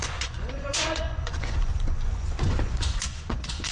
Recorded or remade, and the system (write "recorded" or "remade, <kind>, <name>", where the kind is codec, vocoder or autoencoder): remade, vocoder, Vocos